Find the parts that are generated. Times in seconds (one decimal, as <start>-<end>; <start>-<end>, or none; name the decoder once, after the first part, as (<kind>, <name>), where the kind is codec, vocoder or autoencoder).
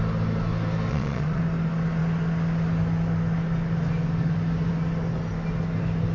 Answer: 0.9-1.4 (vocoder, Vocos)